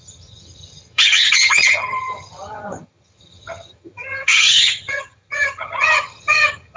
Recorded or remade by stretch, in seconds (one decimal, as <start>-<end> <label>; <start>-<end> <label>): 0.0-6.8 remade